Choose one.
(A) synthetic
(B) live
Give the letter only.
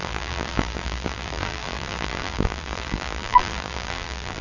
A